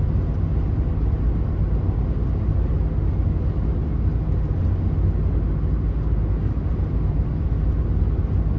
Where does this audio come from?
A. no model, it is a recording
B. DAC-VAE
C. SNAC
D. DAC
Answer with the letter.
A